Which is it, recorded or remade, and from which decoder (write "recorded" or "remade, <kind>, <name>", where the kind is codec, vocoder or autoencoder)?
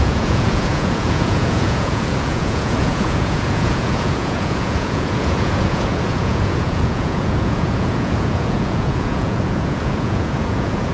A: remade, vocoder, Vocos